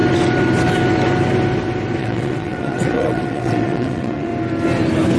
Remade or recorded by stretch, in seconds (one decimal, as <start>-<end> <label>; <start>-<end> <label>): 0.0-2.0 recorded; 2.0-4.3 remade; 4.3-5.2 recorded